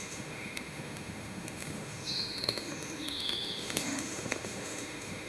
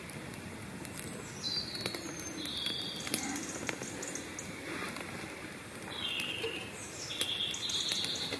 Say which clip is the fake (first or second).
first